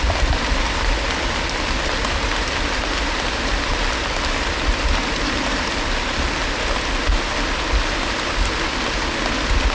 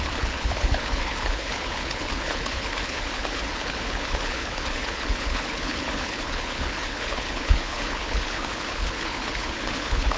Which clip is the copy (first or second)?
second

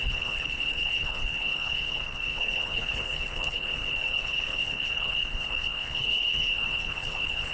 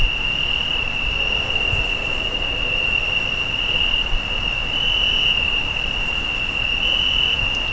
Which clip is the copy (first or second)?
first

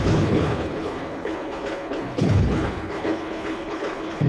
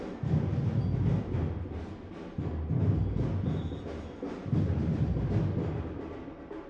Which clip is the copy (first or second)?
first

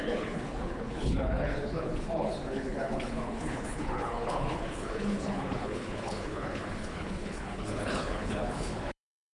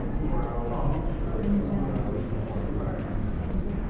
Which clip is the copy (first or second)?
first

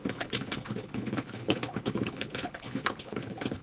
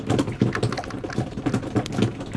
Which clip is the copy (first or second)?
first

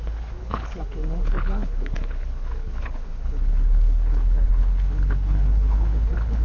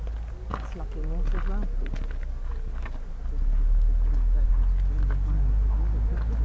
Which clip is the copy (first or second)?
first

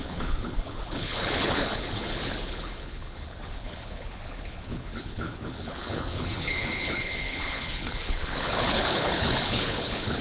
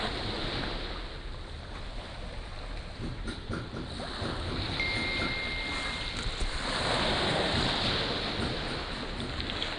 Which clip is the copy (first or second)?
first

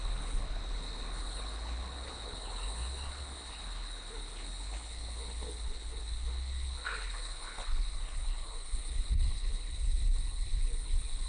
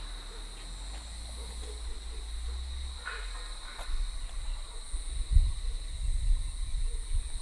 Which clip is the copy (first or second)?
first